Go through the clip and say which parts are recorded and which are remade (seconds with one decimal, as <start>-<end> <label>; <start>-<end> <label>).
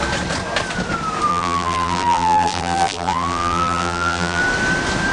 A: 0.0-1.3 recorded; 1.3-4.4 remade; 4.4-5.1 recorded